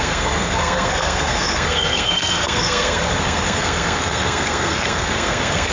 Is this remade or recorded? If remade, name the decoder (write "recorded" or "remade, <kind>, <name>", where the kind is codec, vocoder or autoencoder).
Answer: remade, codec, SNAC